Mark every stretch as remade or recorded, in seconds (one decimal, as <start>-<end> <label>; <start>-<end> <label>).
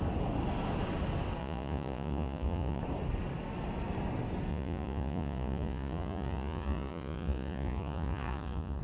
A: 0.0-1.4 recorded; 1.4-2.8 remade; 2.8-4.5 recorded; 4.5-8.8 remade